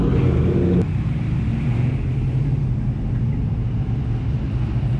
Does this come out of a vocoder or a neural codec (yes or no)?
no